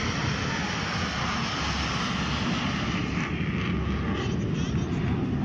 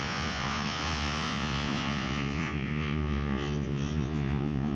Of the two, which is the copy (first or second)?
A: second